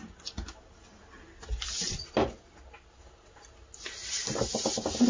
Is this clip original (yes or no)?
yes